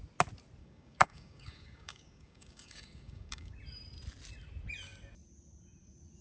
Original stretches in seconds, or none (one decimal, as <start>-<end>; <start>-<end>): 0.0-0.6; 3.5-6.2